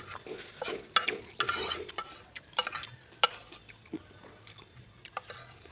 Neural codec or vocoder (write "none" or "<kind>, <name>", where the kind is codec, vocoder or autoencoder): none